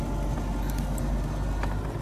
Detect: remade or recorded recorded